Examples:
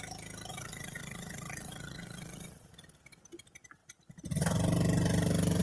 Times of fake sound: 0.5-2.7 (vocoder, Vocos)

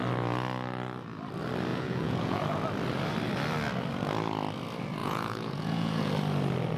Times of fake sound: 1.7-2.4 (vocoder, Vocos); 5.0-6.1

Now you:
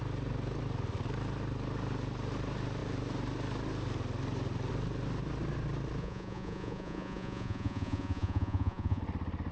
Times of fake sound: 6.0-9.0 (vocoder, Vocos)

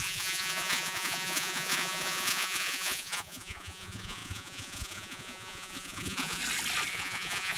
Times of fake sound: 0.0-6.4 (vocoder, Vocos); 6.9-7.6

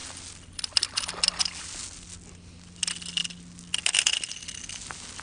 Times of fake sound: none